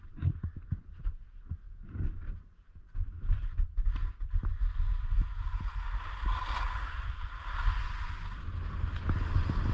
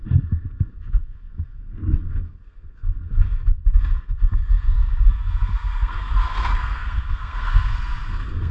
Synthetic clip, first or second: second